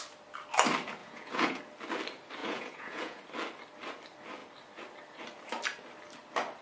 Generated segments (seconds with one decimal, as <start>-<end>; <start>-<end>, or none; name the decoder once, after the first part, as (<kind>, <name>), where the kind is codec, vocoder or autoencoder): 1.0-1.6 (vocoder, Vocos); 2.4-3.2